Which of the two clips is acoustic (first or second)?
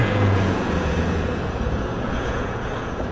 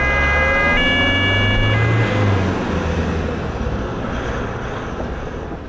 second